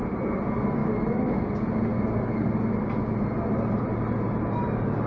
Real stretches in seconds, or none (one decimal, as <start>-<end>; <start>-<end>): 0.0-0.8; 1.5-5.1